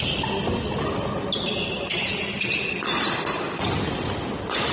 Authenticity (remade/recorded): recorded